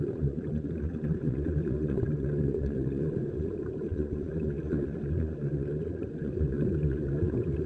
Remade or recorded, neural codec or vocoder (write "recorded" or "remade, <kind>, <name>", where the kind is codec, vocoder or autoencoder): remade, vocoder, Vocos